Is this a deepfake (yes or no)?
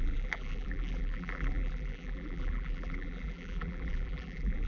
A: yes